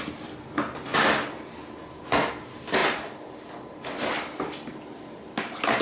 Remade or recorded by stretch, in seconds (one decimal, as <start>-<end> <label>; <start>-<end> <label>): 0.0-5.8 recorded